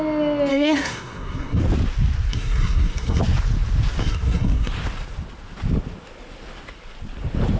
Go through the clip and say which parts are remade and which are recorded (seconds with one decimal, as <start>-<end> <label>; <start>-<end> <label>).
0.0-0.5 recorded; 0.5-1.6 remade; 1.6-2.3 recorded; 2.3-3.2 remade; 3.2-4.0 recorded; 4.0-4.7 remade; 4.7-7.6 recorded